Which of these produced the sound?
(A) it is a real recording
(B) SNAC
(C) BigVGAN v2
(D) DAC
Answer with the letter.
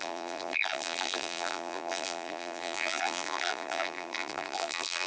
C